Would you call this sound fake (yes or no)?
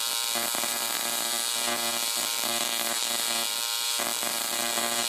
yes